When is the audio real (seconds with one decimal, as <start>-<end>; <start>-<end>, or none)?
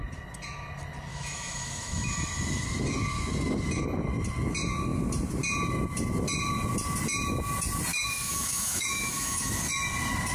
0.0-1.1; 2.1-7.9; 9.6-10.3